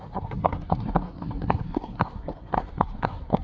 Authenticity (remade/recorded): remade